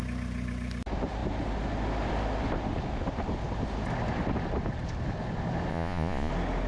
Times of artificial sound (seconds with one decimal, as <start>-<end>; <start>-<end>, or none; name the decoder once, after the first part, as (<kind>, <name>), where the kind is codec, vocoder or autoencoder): 5.7-6.3 (vocoder, Vocos)